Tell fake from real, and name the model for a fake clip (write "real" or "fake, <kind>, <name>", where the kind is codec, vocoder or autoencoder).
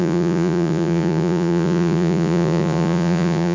fake, vocoder, Vocos